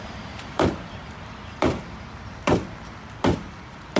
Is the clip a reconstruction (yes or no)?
yes